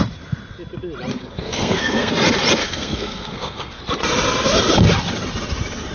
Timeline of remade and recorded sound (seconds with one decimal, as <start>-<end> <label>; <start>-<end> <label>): 0.0-1.1 recorded; 1.1-2.1 remade; 2.1-2.6 recorded; 2.6-3.8 remade; 3.8-5.9 recorded